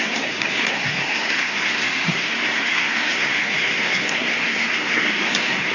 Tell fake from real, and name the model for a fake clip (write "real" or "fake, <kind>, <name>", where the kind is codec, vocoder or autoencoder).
fake, codec, SNAC